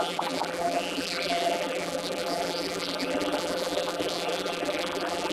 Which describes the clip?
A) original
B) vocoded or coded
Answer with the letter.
B